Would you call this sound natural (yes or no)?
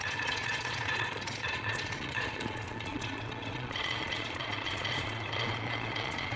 no